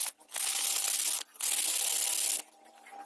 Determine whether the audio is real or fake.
real